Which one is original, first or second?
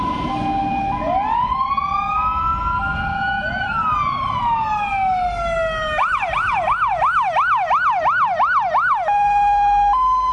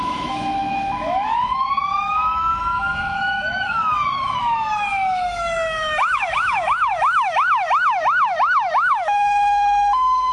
first